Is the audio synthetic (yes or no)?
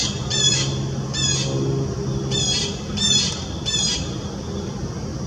yes